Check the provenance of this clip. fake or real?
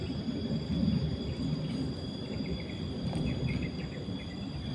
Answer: real